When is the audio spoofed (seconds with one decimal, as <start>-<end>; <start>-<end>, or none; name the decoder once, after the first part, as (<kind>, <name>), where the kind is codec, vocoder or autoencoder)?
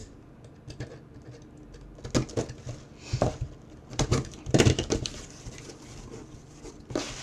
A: 2.9-6.8 (vocoder, BigVGAN v2)